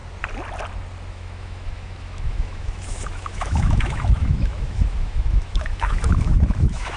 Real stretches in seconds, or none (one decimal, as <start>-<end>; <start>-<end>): 0.0-1.1